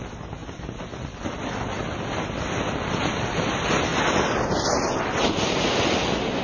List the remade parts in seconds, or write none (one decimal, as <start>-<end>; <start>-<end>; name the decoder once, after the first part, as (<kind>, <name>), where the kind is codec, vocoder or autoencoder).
none